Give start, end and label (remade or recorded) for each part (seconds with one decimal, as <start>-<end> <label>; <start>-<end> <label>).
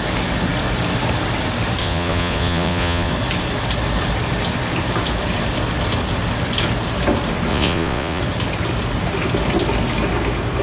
0.0-1.8 recorded; 1.8-3.1 remade; 3.1-7.5 recorded; 7.5-8.2 remade; 8.2-10.6 recorded